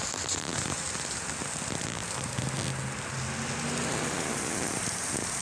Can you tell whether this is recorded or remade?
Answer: recorded